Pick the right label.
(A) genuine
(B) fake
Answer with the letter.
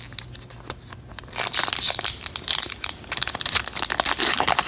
A